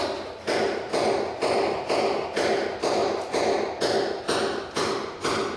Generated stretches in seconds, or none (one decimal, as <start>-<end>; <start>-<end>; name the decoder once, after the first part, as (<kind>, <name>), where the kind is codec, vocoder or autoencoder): 0.0-3.0 (vocoder, BigVGAN v2); 4.8-5.6